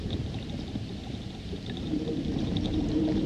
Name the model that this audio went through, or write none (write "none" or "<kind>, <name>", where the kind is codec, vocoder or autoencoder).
vocoder, BigVGAN v2